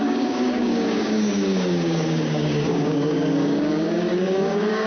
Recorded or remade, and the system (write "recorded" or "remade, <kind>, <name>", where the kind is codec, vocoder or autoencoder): remade, codec, DAC